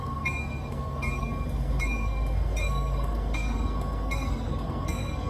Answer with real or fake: fake